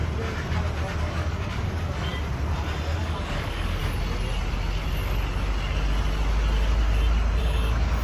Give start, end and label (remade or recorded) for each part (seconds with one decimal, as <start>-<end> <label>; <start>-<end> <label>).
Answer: 0.0-1.0 recorded; 1.0-2.1 remade; 2.1-3.0 recorded; 3.0-3.8 remade; 3.8-7.4 recorded; 7.4-8.0 remade